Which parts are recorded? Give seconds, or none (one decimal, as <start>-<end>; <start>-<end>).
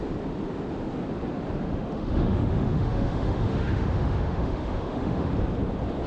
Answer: 0.0-1.6; 5.3-6.1